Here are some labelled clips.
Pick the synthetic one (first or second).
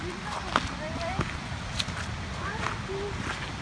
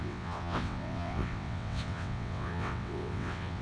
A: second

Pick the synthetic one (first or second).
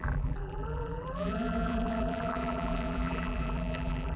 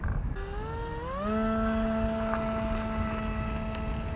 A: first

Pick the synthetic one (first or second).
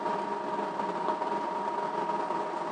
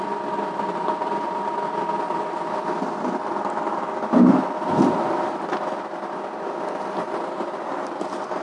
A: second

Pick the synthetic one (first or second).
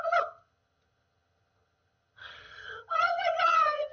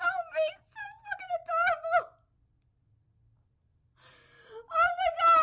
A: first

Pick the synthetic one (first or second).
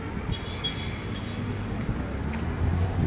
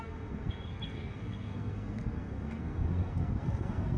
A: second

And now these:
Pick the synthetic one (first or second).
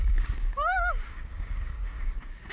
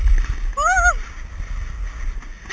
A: first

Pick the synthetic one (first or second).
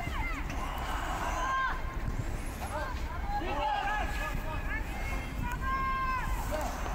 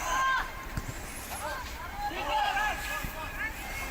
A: second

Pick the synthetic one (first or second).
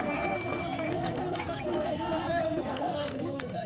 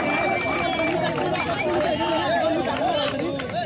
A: first